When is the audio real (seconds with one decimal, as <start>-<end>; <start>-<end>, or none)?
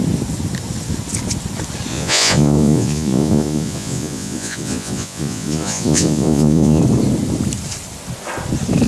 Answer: 0.0-1.9; 6.8-8.9